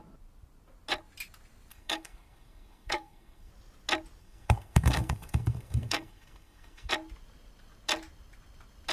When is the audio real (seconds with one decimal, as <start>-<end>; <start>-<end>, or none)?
0.0-1.7; 3.5-4.2; 6.9-8.9